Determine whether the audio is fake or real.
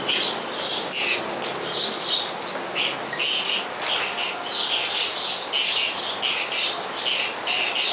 real